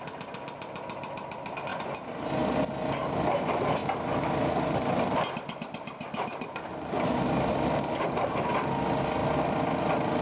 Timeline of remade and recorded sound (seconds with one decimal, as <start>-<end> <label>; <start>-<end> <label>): 0.0-10.2 recorded